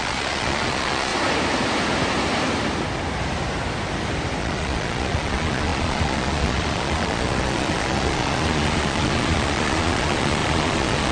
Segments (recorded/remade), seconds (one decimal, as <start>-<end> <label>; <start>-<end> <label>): 0.0-1.1 remade; 1.1-4.4 recorded; 4.4-11.1 remade